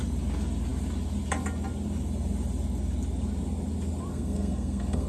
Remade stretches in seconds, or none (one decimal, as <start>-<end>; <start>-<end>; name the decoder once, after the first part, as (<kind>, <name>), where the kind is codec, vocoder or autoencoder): 4.1-5.1 (codec, SNAC)